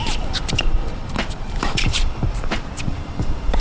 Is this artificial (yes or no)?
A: yes